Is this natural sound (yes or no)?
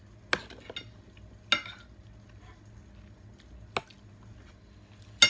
yes